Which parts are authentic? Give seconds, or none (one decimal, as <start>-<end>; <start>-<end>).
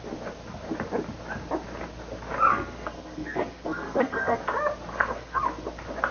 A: 0.0-2.5; 4.4-4.9; 5.4-6.1